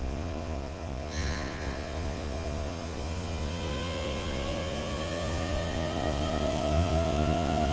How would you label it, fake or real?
fake